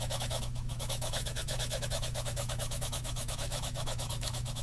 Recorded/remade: remade